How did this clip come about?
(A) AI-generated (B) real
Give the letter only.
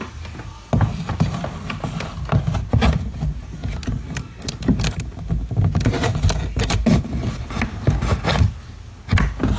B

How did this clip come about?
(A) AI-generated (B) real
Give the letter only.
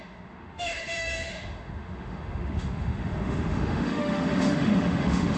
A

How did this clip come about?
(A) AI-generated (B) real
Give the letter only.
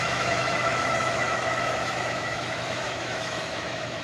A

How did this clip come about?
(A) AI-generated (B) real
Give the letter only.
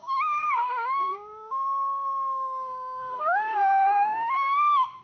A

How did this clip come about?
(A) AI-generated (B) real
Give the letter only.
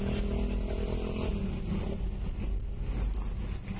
B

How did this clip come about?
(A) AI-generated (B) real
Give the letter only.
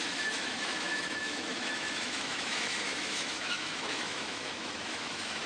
A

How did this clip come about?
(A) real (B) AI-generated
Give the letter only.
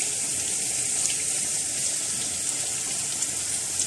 A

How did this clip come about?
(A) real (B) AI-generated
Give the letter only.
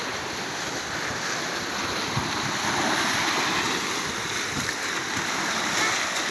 A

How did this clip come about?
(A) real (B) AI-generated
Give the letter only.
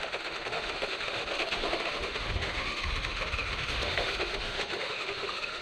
B